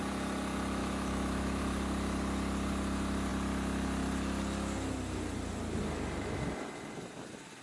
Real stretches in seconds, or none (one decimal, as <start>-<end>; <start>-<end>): 0.0-0.8; 1.6-7.6